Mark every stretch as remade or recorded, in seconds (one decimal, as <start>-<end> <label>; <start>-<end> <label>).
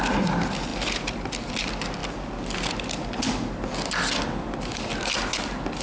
0.0-5.8 recorded